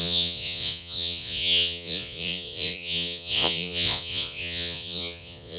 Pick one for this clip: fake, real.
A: fake